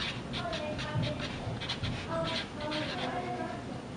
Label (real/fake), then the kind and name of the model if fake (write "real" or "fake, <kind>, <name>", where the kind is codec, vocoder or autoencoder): real